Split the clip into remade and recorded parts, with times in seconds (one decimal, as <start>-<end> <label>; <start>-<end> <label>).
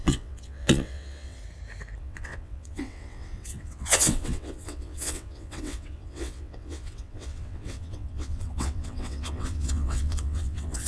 0.0-1.4 remade; 1.4-2.0 recorded; 2.0-10.9 remade